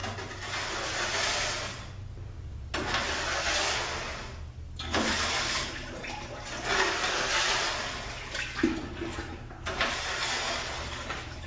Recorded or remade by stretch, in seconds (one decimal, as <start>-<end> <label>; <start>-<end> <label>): 0.0-11.5 recorded